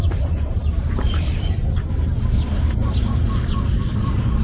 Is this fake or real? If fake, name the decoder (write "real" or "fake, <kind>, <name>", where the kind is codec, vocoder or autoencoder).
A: fake, vocoder, BigVGAN v2